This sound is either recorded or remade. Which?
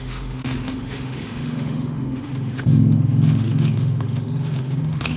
remade